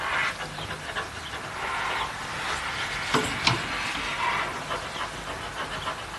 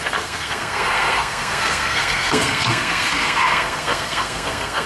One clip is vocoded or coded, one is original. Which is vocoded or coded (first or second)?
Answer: second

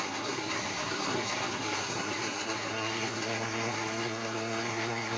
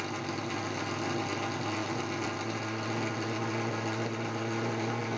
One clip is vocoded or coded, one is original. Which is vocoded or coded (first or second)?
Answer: first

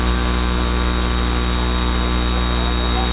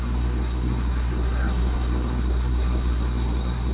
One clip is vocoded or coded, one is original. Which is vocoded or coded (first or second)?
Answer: second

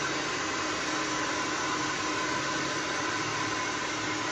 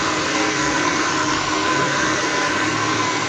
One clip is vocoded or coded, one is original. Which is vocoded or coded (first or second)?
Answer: second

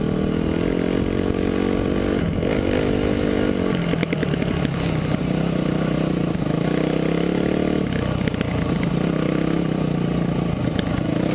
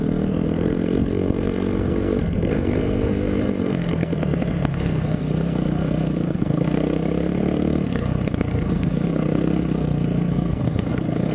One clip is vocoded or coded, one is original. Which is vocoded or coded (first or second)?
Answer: second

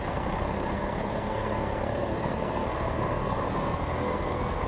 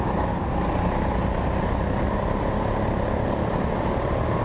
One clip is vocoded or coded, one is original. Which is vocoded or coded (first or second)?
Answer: first